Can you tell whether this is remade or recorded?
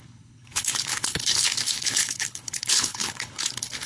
remade